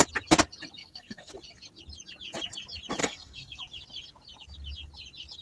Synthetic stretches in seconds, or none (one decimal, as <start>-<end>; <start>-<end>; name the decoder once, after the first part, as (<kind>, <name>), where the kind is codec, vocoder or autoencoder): 0.8-1.3 (codec, SNAC); 3.0-3.6